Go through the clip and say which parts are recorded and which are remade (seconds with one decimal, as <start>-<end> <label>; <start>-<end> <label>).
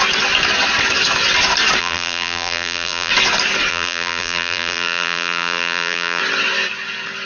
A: 0.0-1.8 recorded; 1.8-3.1 remade; 3.1-3.7 recorded; 3.7-6.2 remade; 6.2-7.3 recorded